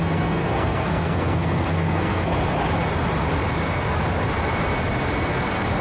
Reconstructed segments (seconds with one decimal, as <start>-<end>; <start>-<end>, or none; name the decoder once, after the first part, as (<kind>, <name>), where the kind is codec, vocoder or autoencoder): 0.0-2.3 (codec, SNAC)